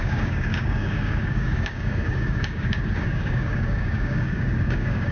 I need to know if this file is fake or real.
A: fake